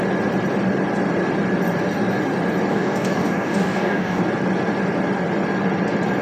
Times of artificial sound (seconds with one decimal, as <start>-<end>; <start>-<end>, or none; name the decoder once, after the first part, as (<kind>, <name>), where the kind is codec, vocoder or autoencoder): 2.7-4.2 (codec, DAC)